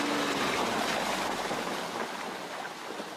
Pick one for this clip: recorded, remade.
recorded